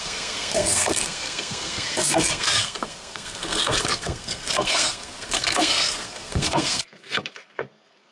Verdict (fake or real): fake